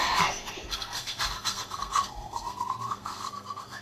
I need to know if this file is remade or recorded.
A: remade